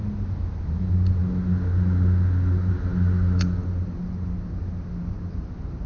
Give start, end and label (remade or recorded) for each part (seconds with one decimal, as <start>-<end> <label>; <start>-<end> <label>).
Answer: 0.0-5.9 recorded